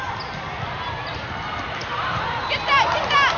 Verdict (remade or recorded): recorded